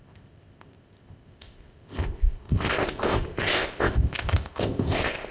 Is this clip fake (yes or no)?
yes